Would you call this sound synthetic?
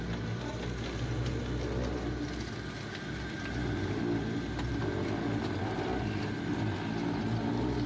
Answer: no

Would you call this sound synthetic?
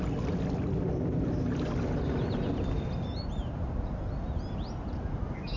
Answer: no